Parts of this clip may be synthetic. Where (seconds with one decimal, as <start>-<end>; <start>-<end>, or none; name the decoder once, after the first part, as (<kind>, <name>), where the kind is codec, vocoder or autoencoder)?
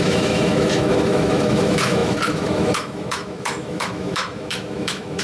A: 0.0-5.2 (autoencoder, DAC-VAE)